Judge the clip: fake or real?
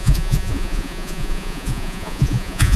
fake